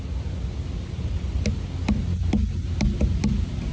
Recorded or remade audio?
recorded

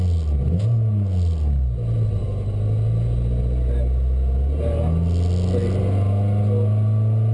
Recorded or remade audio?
recorded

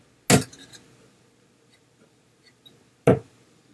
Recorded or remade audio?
recorded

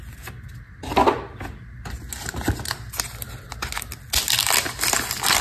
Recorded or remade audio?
recorded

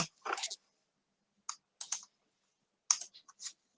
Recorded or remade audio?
recorded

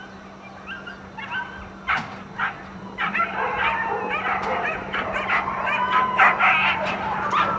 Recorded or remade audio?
recorded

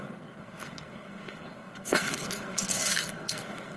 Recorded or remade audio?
remade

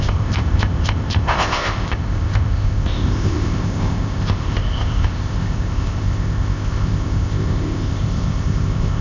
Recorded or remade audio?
remade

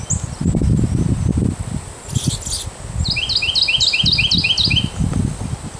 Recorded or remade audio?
recorded